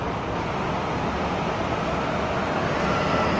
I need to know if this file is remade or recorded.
recorded